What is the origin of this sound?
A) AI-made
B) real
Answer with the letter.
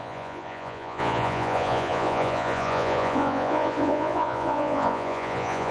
A